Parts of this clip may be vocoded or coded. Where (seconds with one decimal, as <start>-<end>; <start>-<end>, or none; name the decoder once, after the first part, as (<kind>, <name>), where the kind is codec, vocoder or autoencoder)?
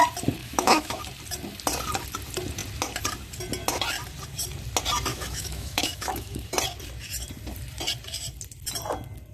0.4-1.0 (autoencoder, DAC-VAE); 5.1-6.5